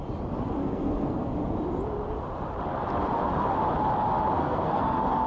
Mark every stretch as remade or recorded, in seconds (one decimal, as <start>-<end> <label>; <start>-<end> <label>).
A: 0.0-0.6 recorded; 0.6-1.3 remade; 1.3-4.4 recorded; 4.4-5.3 remade